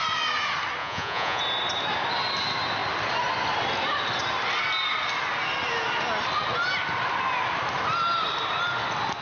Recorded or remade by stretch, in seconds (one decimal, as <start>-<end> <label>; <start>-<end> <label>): 0.0-0.8 recorded; 0.8-1.4 remade; 1.4-9.2 recorded